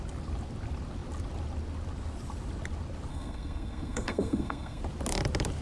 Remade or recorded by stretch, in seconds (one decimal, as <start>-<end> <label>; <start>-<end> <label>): 0.0-3.1 recorded; 3.1-4.8 remade; 4.8-5.6 recorded